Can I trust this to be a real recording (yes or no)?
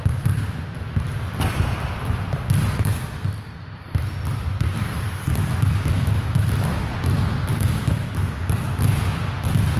yes